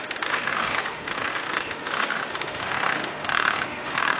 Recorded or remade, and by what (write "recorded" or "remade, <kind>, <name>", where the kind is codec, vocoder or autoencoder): remade, autoencoder, DAC-VAE